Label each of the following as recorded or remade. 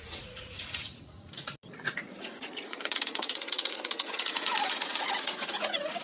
remade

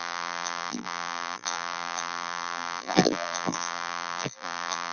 remade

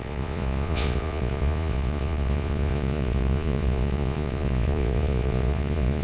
remade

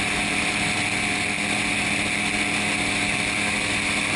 recorded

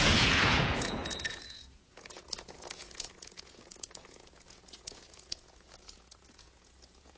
remade